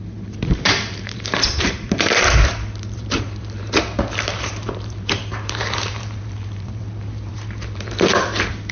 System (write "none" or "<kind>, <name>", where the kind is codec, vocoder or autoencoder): vocoder, BigVGAN v2